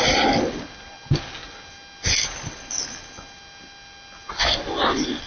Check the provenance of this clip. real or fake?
real